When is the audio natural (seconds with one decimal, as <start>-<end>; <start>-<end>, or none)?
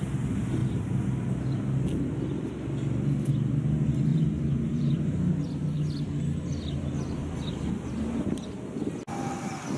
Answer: 0.0-4.1; 5.3-9.8